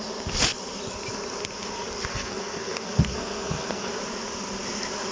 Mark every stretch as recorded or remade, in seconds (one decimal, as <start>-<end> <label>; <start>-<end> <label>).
0.0-2.1 recorded; 2.1-3.9 remade; 3.9-5.1 recorded